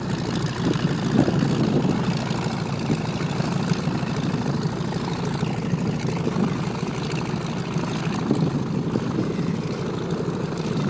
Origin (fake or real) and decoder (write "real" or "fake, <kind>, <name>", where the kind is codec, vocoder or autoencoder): real